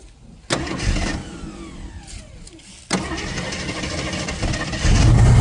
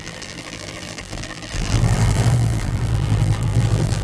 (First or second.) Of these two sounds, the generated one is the second